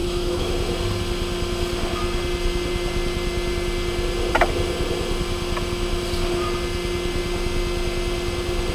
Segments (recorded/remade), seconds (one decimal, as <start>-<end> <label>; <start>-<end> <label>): 0.0-0.5 remade; 0.5-8.7 recorded